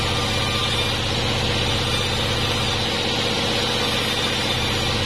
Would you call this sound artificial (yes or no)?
no